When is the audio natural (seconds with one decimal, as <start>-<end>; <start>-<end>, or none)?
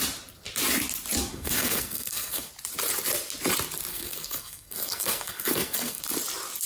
0.0-1.3; 2.5-3.9; 6.0-6.7